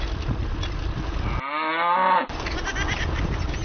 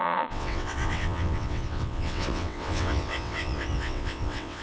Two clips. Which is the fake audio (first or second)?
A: second